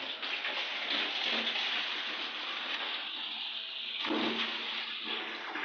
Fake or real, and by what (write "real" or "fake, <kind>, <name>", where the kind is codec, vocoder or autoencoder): real